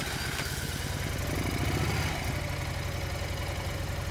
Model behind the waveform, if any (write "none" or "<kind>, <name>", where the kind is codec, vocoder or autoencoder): none